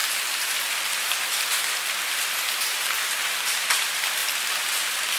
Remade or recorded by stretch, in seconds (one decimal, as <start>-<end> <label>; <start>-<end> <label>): 0.0-5.2 remade